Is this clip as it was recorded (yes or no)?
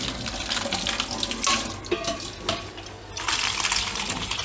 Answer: yes